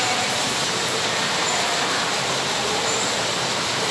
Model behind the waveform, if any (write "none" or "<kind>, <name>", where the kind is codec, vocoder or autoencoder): vocoder, BigVGAN v2